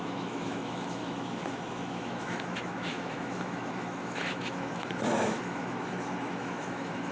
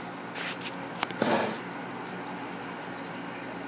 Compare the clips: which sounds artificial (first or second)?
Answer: first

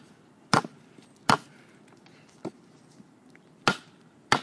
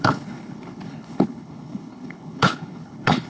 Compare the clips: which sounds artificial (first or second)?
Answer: second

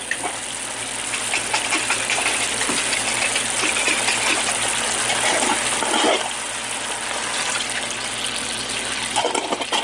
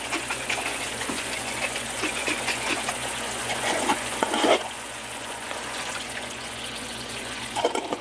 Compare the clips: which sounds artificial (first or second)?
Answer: second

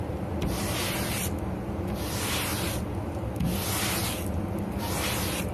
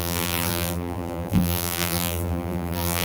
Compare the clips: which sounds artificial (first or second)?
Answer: second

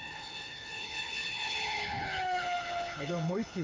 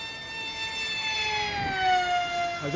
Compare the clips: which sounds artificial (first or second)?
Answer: first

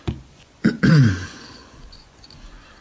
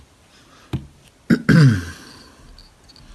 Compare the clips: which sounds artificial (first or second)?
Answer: first